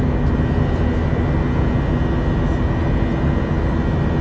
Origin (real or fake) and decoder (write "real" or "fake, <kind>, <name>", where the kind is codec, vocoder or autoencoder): real